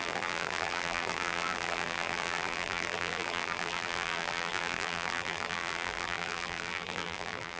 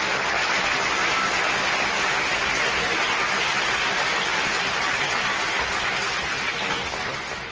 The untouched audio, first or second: second